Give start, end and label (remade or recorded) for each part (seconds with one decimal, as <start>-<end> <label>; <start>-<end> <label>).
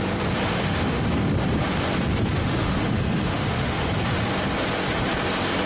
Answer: 0.0-0.5 recorded; 0.5-1.1 remade; 1.1-2.4 recorded; 2.4-3.9 remade; 3.9-5.7 recorded